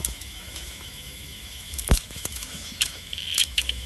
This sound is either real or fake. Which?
fake